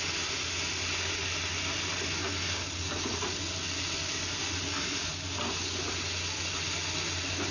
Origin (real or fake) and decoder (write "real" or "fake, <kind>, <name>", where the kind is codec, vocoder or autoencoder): real